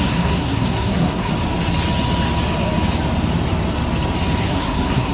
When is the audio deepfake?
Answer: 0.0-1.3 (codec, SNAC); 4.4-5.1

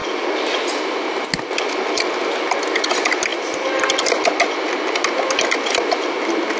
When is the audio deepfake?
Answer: none